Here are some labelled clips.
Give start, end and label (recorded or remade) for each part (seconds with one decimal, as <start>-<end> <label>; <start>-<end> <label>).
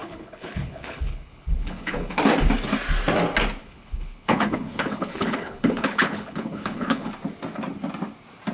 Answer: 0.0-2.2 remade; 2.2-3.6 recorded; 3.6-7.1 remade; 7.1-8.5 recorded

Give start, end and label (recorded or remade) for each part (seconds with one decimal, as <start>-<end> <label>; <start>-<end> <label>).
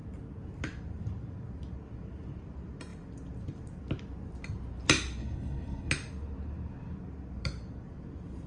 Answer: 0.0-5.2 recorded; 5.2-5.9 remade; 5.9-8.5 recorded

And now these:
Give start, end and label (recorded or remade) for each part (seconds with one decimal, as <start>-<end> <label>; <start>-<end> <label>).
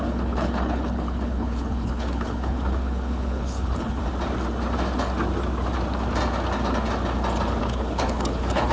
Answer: 0.0-4.0 remade; 4.0-7.6 recorded; 7.6-8.7 remade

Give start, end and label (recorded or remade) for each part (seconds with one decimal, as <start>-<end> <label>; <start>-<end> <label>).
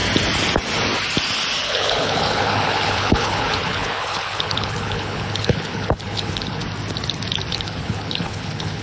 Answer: 0.0-1.7 recorded; 1.7-6.6 remade; 6.6-7.5 recorded; 7.5-8.8 remade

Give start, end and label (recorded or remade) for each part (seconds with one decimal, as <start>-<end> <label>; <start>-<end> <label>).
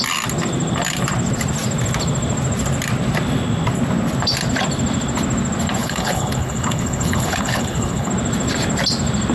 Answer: 0.0-5.8 recorded; 5.8-8.1 remade; 8.1-9.3 recorded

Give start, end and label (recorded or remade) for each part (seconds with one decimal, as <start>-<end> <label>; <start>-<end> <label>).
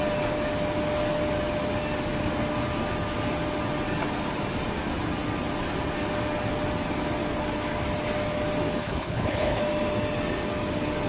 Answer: 0.0-8.8 recorded; 8.8-9.6 remade; 9.6-11.1 recorded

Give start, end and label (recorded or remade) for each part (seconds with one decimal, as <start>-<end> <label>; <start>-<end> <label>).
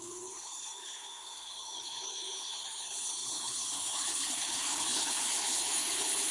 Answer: 0.0-6.3 remade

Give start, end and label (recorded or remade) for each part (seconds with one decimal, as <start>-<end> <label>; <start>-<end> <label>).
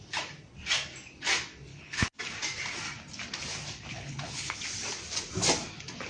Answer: 0.0-1.7 recorded; 1.7-2.2 remade; 2.2-3.9 recorded; 3.9-4.6 remade; 4.6-6.1 recorded